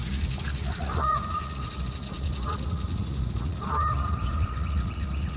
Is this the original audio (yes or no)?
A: no